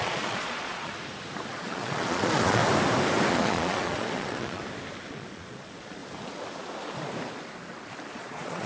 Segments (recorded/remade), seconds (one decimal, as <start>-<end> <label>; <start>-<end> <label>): 0.0-0.9 remade; 0.9-1.5 recorded; 1.5-2.6 remade; 2.6-3.3 recorded; 3.3-4.6 remade; 4.6-5.1 recorded; 5.1-6.0 remade; 6.0-8.1 recorded; 8.1-8.7 remade